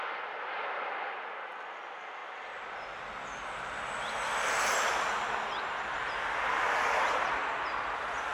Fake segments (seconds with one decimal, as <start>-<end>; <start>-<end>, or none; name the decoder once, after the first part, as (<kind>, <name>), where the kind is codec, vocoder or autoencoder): 2.2-3.1 (vocoder, BigVGAN v2)